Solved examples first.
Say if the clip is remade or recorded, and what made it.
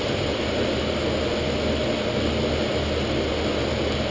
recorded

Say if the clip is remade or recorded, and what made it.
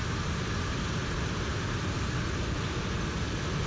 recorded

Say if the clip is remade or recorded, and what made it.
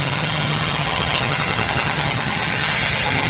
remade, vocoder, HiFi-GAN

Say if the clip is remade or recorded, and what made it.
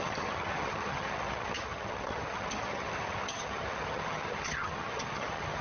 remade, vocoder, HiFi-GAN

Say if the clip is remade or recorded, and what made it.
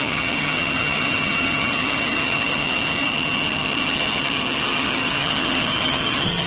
remade, vocoder, HiFi-GAN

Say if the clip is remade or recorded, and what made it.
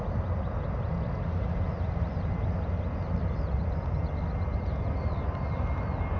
recorded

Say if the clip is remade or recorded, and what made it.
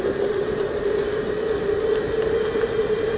recorded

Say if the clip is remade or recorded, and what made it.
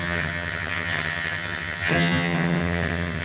remade, vocoder, HiFi-GAN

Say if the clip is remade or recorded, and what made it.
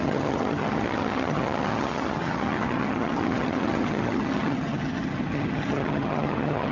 remade, vocoder, HiFi-GAN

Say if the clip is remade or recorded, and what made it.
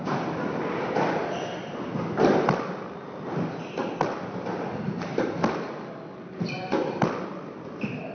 recorded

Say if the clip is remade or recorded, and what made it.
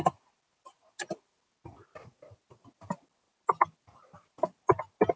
recorded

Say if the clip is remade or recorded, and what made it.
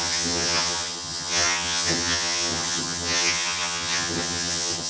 remade, vocoder, HiFi-GAN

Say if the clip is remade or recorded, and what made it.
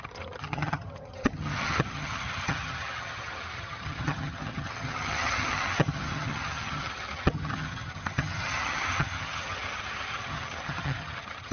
remade, vocoder, HiFi-GAN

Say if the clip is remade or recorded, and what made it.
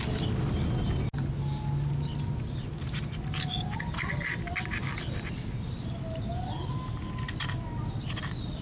recorded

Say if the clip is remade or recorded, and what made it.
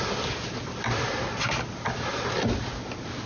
recorded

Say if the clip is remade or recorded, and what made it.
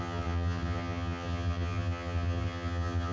remade, vocoder, HiFi-GAN